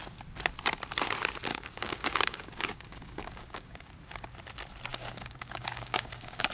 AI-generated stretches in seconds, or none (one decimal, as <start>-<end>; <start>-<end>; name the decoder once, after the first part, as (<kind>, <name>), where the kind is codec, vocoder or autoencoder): 1.5-3.9 (codec, DAC); 4.9-6.5